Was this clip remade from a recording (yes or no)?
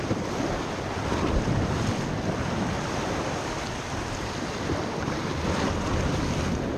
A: no